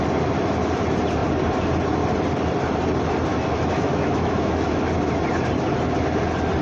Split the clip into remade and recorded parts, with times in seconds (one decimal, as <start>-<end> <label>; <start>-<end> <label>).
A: 0.0-3.3 recorded; 3.3-4.8 remade; 4.8-6.6 recorded